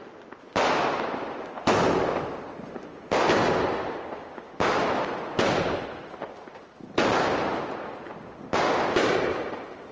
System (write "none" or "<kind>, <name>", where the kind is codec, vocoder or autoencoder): none